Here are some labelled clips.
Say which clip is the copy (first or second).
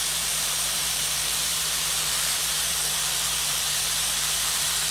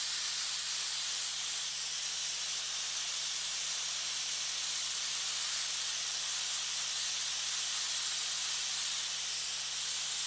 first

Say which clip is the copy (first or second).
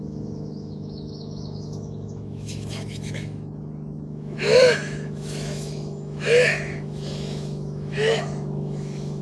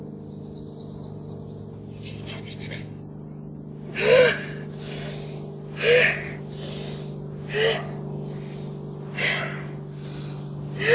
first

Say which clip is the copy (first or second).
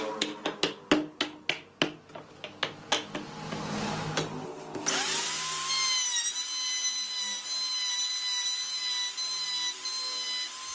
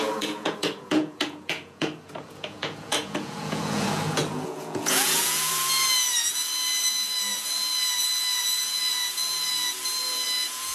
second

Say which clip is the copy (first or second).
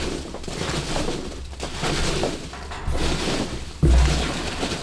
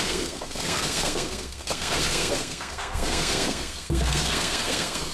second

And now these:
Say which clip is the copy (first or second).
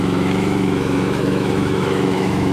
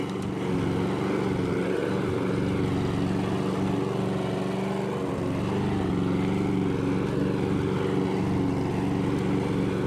first